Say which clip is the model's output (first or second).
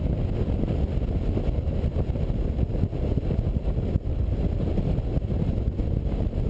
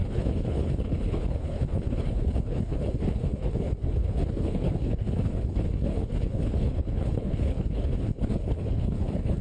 second